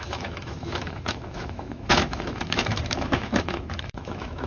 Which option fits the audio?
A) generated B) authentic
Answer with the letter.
A